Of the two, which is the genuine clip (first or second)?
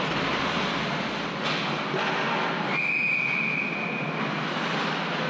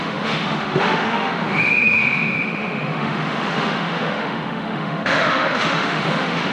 first